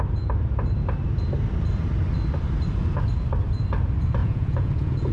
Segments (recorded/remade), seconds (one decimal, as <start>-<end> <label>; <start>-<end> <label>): 0.0-4.2 recorded; 4.2-5.1 remade